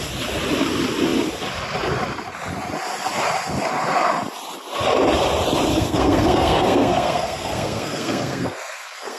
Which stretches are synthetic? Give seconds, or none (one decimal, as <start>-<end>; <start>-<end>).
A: 5.7-9.2